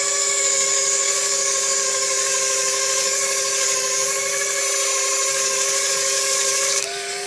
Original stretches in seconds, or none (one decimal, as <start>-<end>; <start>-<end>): 4.6-5.3